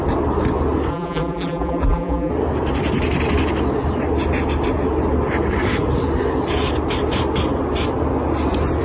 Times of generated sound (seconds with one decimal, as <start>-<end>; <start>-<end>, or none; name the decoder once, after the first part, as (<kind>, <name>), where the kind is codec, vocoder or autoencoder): 0.9-2.3 (vocoder, BigVGAN v2)